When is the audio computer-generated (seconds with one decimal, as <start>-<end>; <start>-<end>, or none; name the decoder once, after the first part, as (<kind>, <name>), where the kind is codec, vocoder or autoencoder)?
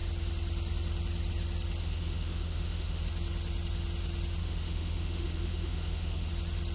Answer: 1.8-3.0 (autoencoder, DAC-VAE); 4.4-6.3